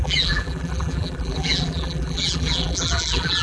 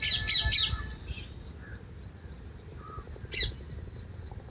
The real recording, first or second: second